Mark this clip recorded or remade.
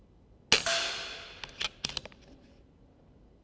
recorded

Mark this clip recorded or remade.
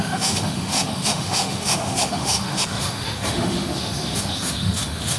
remade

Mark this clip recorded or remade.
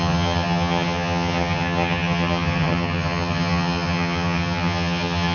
remade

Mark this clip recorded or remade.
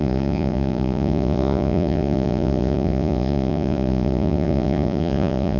remade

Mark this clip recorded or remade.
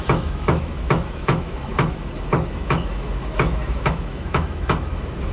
remade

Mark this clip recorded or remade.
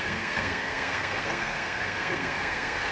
remade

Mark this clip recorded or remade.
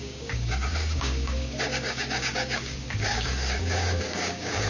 remade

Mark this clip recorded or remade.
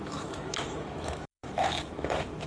remade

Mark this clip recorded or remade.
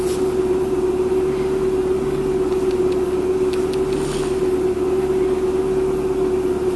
recorded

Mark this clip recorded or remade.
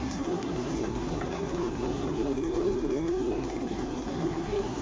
remade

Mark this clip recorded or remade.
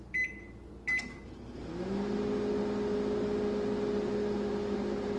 recorded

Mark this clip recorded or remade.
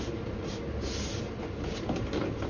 recorded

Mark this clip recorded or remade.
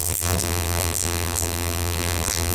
remade